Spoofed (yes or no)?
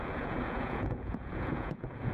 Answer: yes